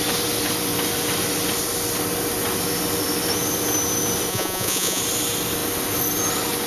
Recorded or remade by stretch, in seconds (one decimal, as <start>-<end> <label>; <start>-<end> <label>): 0.0-4.3 recorded; 4.3-5.0 remade; 5.0-6.7 recorded